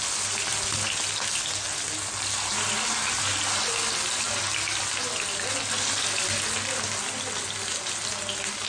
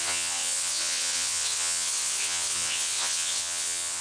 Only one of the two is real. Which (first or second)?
first